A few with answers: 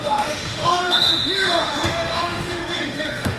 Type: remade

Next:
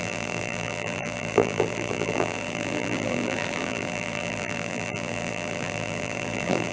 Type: remade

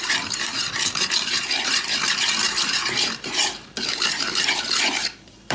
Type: remade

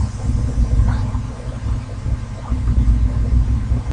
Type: recorded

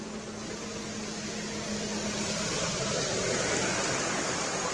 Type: recorded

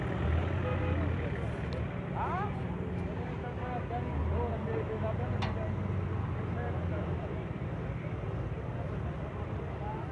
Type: recorded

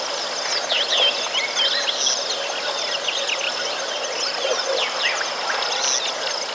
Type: recorded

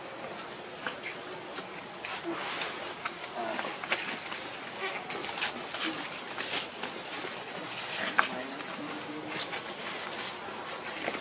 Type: recorded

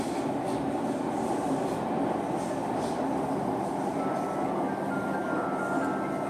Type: recorded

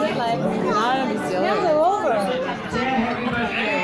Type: recorded